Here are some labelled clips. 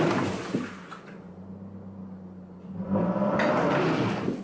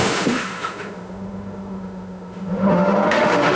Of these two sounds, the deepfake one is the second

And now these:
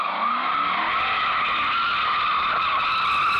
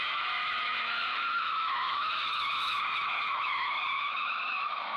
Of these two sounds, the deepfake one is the second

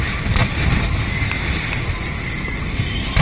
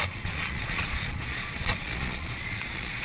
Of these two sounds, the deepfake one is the second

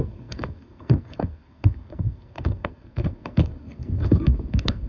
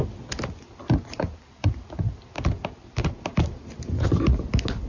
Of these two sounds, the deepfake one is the first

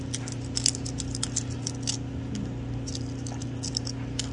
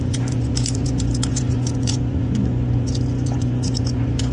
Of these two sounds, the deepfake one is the second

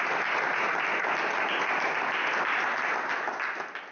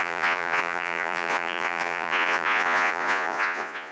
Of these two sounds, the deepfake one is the second